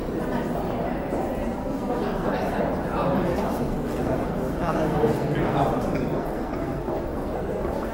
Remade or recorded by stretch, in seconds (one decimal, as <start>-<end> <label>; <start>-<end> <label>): 0.0-1.6 recorded; 1.6-2.6 remade; 2.6-3.3 recorded; 3.3-7.9 remade